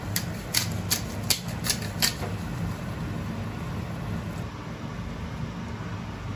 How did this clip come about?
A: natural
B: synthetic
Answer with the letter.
A